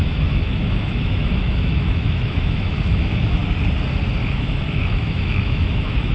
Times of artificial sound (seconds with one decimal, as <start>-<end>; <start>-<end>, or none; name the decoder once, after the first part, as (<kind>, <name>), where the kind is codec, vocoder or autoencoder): 0.0-3.4 (autoencoder, DAC-VAE); 4.3-6.1